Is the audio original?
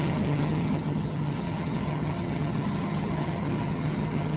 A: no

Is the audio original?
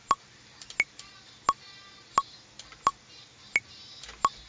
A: yes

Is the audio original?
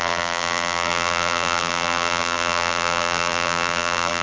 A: no